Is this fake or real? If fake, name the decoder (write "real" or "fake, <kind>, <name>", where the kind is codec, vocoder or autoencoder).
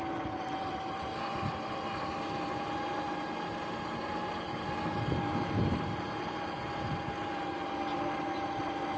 real